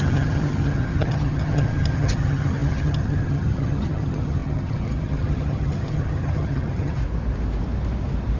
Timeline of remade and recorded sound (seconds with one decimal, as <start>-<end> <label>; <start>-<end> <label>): 0.0-7.0 remade; 7.0-8.4 recorded